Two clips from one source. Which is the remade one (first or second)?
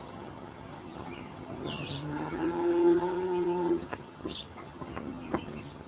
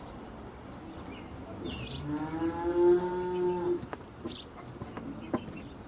first